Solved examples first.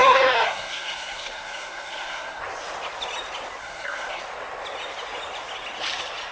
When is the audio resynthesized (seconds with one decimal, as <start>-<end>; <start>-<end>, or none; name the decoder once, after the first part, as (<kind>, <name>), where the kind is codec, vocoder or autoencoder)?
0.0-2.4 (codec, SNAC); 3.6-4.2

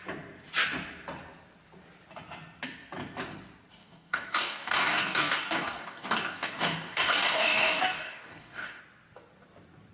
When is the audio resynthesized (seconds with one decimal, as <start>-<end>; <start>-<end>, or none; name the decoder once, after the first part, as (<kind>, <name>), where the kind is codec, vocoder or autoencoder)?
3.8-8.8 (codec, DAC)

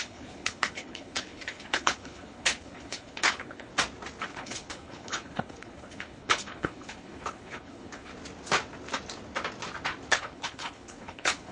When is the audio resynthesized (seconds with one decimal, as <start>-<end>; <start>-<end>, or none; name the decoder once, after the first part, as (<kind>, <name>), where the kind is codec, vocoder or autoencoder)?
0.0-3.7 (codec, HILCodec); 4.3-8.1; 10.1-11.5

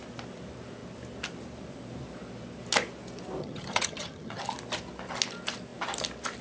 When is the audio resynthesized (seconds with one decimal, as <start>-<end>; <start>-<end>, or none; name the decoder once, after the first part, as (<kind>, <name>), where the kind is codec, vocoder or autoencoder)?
3.4-4.4 (vocoder, HiFi-GAN)

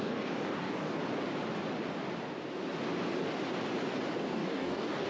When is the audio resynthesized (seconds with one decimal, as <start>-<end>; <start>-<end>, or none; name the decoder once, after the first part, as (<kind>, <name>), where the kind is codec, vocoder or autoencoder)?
0.0-1.0 (codec, DAC); 4.1-5.1

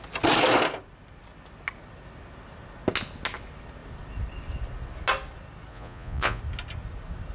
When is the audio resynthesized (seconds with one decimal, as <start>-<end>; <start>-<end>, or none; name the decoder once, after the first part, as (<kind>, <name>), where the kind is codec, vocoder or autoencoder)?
5.7-6.4 (vocoder, Vocos)

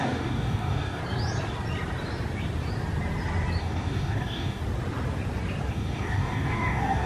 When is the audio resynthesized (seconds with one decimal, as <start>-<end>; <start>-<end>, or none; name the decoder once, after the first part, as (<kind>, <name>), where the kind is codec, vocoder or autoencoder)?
0.0-1.0 (codec, DAC); 3.6-4.6; 5.7-7.1